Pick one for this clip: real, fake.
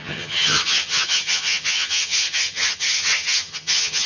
fake